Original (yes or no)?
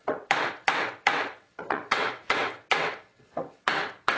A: no